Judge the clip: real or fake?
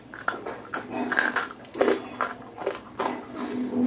real